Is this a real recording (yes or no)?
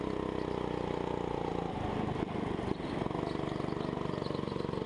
yes